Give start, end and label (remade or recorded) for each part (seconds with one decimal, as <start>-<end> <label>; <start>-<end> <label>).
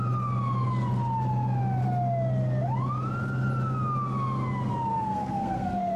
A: 0.0-4.9 recorded; 4.9-6.0 remade